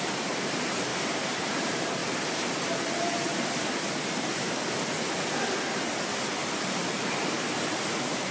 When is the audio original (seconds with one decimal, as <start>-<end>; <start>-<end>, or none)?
0.9-1.5; 2.0-2.8; 3.3-7.0